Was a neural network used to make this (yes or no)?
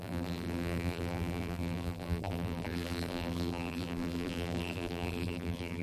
yes